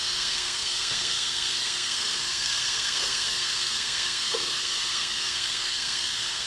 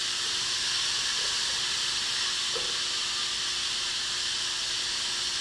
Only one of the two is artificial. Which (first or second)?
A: first